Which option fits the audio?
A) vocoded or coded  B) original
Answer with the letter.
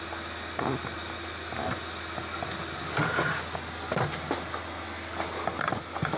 B